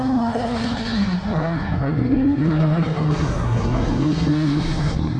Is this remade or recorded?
remade